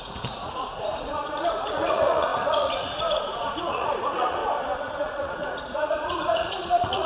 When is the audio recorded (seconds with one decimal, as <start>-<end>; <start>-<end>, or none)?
4.4-4.9